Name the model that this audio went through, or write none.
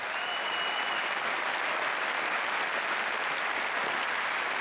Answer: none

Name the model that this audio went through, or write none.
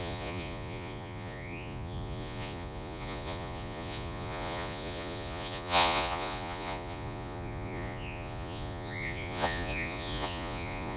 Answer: vocoder, Vocos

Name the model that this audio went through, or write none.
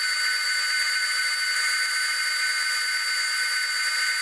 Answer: none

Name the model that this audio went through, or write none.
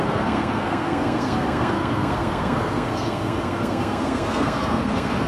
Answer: codec, SNAC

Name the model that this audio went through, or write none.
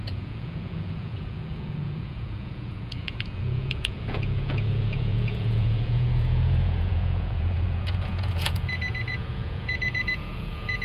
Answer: vocoder, Vocos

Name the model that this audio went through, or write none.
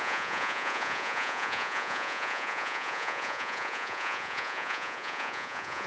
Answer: vocoder, Vocos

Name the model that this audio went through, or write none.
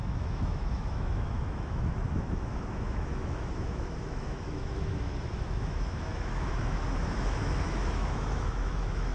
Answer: autoencoder, DAC-VAE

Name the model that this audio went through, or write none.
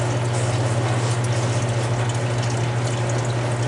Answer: none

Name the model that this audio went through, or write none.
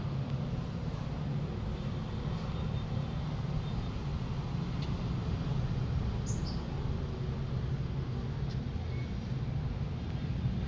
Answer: none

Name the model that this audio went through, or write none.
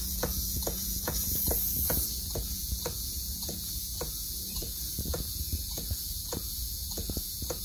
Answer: vocoder, Vocos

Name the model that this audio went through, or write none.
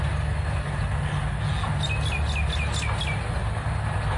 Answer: none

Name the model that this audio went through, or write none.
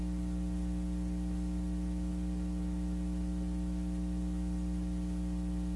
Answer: none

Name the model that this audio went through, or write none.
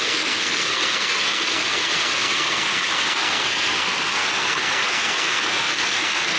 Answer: codec, SNAC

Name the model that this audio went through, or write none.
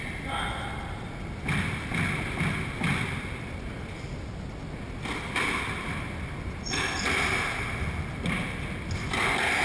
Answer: none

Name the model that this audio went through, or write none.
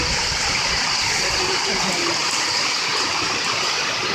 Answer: none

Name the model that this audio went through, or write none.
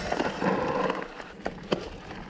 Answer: none